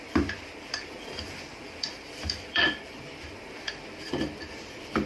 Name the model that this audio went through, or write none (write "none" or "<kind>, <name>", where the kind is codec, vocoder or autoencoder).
vocoder, BigVGAN v2